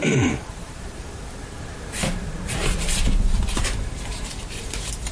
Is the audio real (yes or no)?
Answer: no